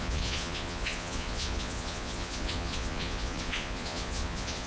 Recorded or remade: remade